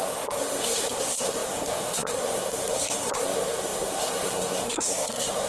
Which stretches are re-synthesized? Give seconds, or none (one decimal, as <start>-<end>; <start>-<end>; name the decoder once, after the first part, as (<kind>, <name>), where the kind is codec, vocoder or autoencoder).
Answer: 0.0-5.5 (codec, SNAC)